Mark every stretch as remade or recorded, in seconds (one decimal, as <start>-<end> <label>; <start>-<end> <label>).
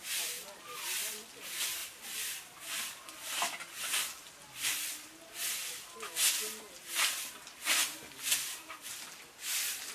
0.0-9.9 recorded